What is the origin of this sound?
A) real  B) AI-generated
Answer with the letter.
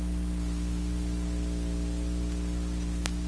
A